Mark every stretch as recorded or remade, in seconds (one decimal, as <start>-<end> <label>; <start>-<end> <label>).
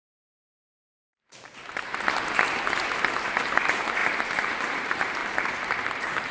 0.0-1.9 remade; 1.9-3.4 recorded; 3.4-6.3 remade